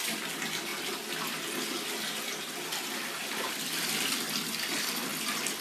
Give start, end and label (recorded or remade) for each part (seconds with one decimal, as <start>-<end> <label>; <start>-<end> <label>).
0.0-0.7 remade; 0.7-2.6 recorded; 2.6-5.1 remade; 5.1-5.6 recorded

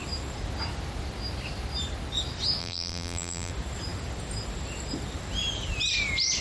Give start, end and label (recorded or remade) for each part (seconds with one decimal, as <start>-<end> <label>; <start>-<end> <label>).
0.0-2.6 recorded; 2.6-3.5 remade; 3.5-6.4 recorded

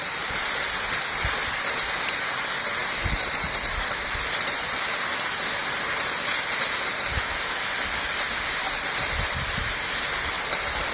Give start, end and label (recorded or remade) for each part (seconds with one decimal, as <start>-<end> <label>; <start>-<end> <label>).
0.0-10.9 recorded

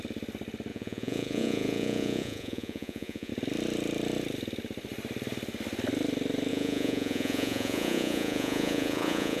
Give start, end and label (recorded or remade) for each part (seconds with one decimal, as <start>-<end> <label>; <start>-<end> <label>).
0.0-0.7 recorded; 0.7-3.3 remade; 3.3-6.5 recorded; 6.5-9.4 remade

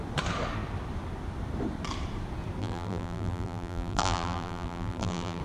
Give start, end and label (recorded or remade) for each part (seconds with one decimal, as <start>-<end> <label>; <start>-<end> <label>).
0.0-2.6 recorded; 2.6-5.4 remade

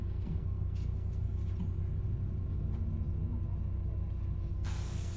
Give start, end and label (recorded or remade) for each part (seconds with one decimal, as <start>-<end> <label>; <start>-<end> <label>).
0.0-1.4 remade; 1.4-4.5 recorded; 4.5-5.2 remade